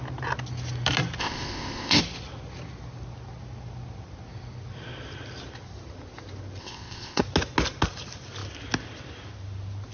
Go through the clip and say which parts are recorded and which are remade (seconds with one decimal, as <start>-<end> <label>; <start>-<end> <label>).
0.0-1.2 recorded; 1.2-2.0 remade; 2.0-6.6 recorded; 6.6-7.2 remade; 7.2-9.9 recorded